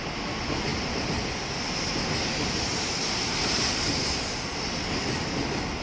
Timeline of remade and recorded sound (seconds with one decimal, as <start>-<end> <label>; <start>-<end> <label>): 0.0-0.7 recorded; 0.7-1.3 remade; 1.3-2.7 recorded; 2.7-3.9 remade; 3.9-5.8 recorded